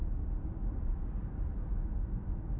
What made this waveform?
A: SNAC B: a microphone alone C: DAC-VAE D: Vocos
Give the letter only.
B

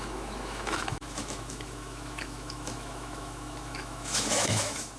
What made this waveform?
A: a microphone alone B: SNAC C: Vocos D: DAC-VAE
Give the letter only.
D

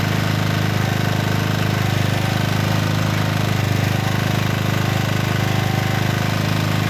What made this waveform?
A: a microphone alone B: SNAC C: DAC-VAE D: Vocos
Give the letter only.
A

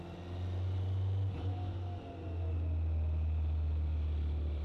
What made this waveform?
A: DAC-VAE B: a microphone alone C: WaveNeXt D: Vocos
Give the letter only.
B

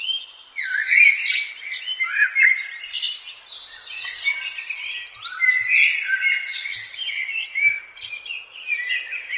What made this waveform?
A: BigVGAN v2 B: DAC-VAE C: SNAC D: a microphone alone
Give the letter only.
D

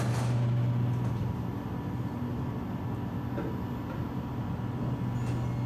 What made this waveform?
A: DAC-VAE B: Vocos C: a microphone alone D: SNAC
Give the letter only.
C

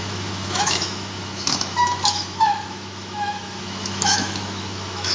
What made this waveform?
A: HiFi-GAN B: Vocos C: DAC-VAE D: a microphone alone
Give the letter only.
C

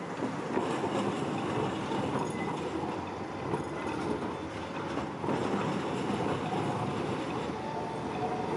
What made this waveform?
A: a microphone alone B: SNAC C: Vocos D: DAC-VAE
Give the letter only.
A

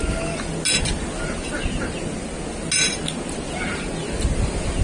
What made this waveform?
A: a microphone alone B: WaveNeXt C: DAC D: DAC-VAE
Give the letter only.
A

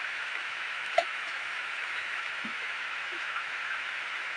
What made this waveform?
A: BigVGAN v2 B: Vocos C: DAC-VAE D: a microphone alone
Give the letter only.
C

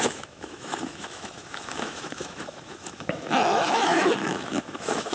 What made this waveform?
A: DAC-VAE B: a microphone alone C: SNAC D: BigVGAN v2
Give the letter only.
A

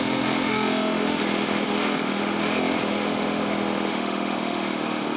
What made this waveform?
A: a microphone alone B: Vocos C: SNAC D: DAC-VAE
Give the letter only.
D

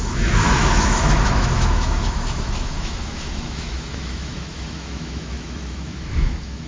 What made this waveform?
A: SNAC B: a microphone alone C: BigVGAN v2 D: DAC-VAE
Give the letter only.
D